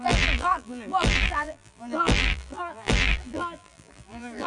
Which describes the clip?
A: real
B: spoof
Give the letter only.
B